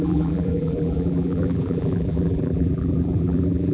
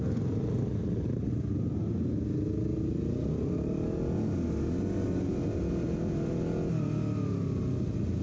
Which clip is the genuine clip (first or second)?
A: second